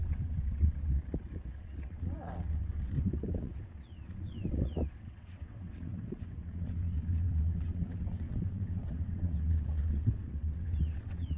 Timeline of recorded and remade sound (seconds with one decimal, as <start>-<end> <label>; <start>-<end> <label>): 0.0-11.4 remade